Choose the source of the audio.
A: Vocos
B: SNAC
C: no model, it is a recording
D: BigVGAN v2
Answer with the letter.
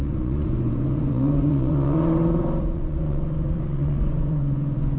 A